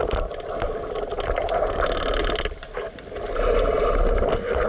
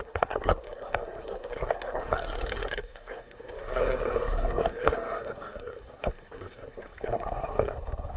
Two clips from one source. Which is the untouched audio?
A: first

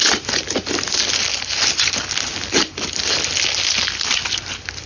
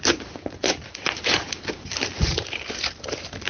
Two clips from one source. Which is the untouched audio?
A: first